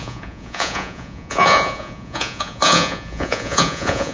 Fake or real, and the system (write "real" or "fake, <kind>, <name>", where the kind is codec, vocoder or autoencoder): fake, vocoder, Vocos